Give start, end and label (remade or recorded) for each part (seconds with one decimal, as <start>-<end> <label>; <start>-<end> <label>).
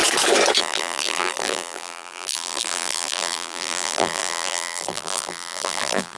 0.0-0.6 recorded; 0.6-6.2 remade